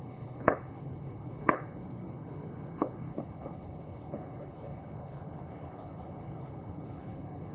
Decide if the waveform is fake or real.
fake